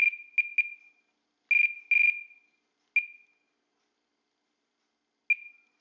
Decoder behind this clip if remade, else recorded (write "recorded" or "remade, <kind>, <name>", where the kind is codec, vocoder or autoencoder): recorded